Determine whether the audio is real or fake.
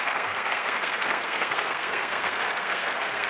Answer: fake